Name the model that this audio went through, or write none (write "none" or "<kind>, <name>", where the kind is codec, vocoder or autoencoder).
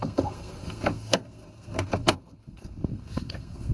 codec, SNAC